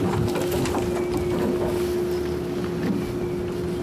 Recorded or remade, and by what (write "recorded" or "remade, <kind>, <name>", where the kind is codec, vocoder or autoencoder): recorded